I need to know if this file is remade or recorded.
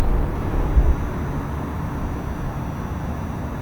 recorded